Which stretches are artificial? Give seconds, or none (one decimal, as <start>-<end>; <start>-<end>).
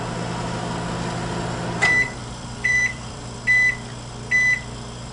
1.8-3.4